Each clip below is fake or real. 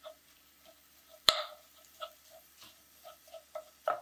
fake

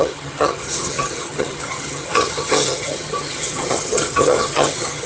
fake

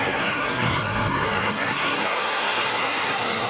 fake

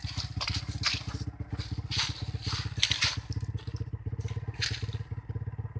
real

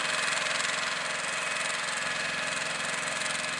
real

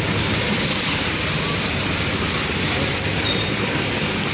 real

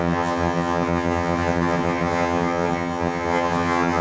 fake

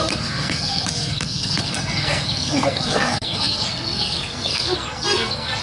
fake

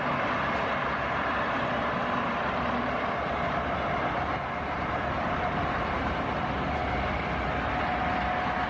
real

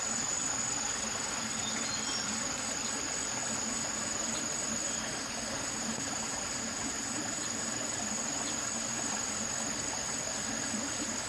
real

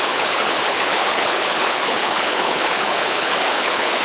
fake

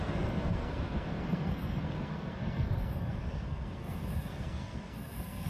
fake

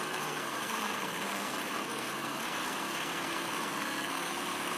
fake